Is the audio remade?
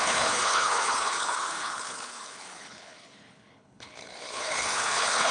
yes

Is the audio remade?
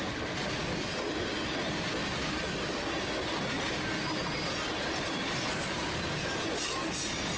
no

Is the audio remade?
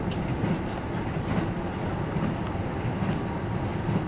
no